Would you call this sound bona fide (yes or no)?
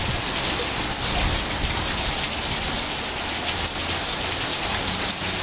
yes